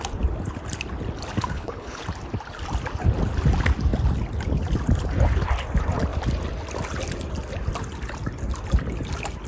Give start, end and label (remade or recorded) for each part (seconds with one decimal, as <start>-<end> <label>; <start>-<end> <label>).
0.0-1.5 recorded; 1.5-2.0 remade; 2.0-9.5 recorded